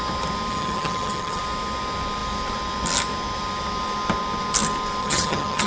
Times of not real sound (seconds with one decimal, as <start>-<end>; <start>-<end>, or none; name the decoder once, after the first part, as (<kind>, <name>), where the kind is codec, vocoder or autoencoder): 0.5-1.4 (vocoder, HiFi-GAN); 5.0-5.7